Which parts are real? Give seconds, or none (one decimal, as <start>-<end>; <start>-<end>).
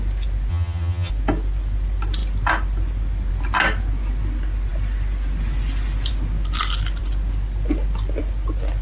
0.0-0.5; 1.1-8.8